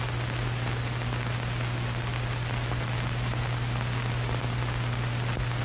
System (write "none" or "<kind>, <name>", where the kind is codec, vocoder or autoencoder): none